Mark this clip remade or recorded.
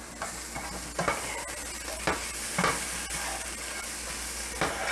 recorded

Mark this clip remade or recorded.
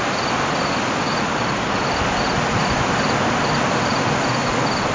recorded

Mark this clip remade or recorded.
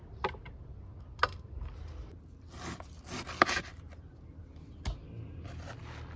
recorded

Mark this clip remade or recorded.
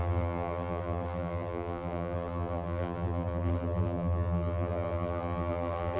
remade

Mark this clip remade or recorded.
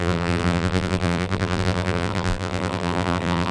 remade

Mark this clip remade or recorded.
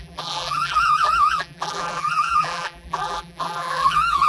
remade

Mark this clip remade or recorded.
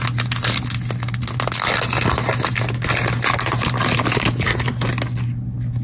recorded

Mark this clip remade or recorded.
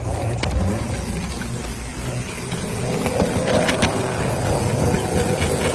recorded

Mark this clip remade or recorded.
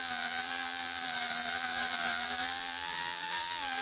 remade